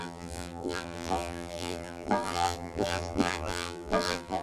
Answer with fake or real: fake